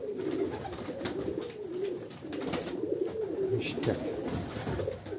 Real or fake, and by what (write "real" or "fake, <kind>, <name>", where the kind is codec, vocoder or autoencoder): real